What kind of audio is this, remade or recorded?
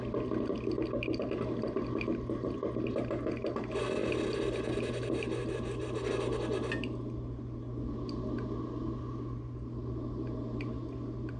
recorded